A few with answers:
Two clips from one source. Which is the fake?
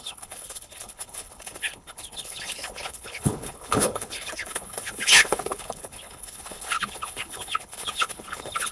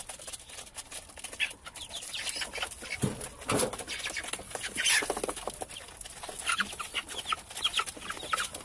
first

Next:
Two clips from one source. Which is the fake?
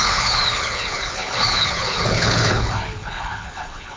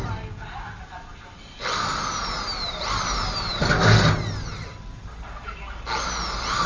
first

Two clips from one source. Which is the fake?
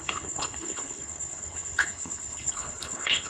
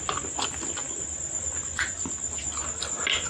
first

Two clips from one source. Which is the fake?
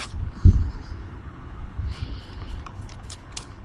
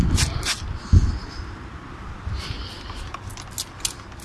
first